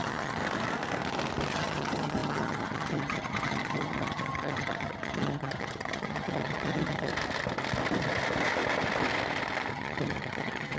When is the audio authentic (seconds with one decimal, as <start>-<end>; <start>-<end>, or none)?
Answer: 0.4-1.5; 7.1-9.7